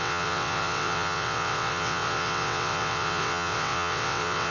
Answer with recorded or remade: remade